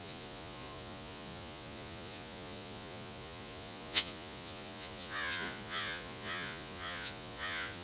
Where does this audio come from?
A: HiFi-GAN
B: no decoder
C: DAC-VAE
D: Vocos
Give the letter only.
D